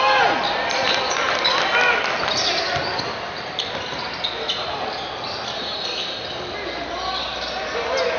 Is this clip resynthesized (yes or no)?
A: no